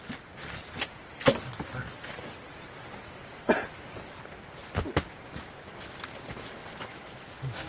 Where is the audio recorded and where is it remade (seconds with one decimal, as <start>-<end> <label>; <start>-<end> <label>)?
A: 0.0-6.9 recorded; 6.9-7.7 remade